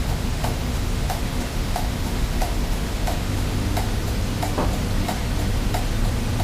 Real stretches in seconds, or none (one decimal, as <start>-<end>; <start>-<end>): 3.6-6.4